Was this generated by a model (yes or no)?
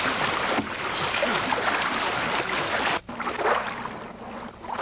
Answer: no